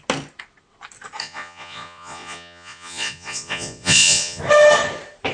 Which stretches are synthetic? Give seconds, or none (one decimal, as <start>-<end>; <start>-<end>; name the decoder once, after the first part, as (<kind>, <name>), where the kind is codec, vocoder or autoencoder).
1.2-4.4 (vocoder, Vocos)